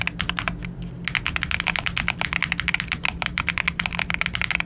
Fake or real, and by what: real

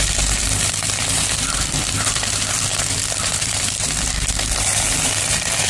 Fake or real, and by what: fake, vocoder, BigVGAN v2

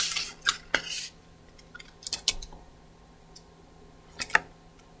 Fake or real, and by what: real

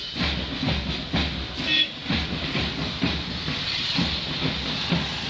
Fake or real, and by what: real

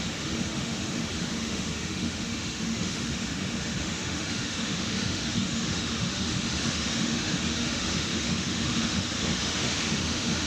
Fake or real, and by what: fake, autoencoder, DAC-VAE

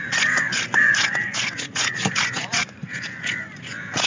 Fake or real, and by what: fake, vocoder, Vocos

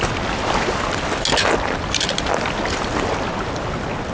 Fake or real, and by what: real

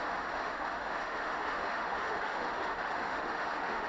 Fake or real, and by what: fake, autoencoder, DAC-VAE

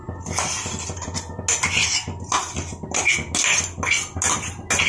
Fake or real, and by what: real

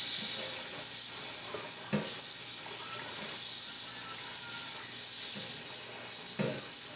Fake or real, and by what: real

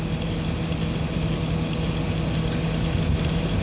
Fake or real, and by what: real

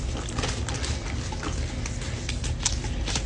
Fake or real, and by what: real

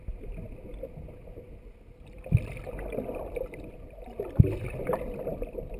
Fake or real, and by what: real